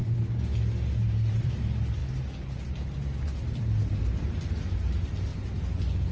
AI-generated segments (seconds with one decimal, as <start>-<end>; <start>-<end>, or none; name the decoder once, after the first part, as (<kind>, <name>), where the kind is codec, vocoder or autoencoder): 1.4-2.0 (vocoder, BigVGAN v2); 3.4-5.3